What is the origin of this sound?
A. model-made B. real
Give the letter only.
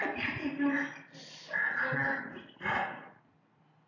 B